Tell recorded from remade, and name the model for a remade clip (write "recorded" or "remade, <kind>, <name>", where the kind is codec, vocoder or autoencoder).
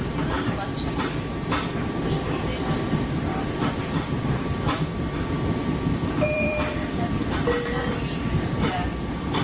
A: remade, vocoder, BigVGAN v2